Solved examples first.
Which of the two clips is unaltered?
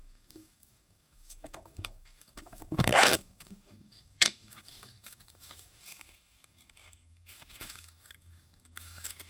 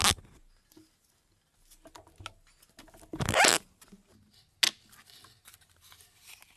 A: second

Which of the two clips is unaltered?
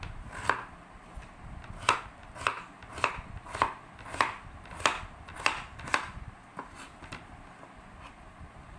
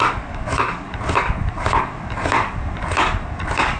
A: first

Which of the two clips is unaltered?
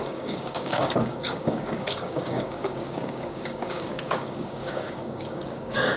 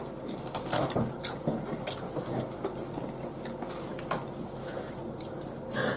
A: second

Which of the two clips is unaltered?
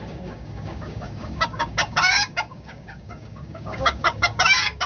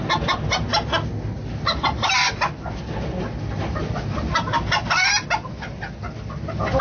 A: second